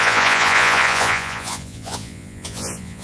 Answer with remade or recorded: remade